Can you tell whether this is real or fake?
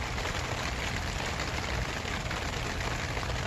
real